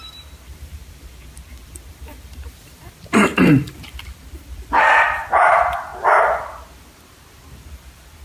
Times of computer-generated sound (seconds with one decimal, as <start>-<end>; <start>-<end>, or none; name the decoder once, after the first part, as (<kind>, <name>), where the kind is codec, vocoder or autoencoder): 0.0-5.9 (vocoder, BigVGAN v2); 7.5-8.2